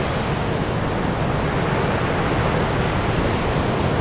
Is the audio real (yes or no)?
yes